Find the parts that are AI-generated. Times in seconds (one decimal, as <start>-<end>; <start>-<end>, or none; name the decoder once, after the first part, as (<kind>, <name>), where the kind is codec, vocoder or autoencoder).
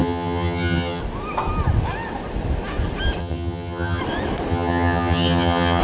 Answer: 0.0-1.0 (vocoder, HiFi-GAN); 3.2-4.0; 4.5-5.8